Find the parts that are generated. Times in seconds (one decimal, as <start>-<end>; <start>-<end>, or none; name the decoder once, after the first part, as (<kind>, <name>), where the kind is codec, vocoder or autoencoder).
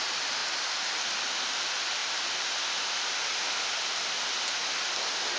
none